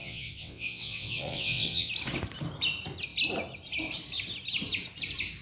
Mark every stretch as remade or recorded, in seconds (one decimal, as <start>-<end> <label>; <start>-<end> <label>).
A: 0.0-1.9 remade; 1.9-5.4 recorded